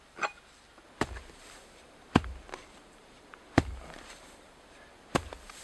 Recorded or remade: recorded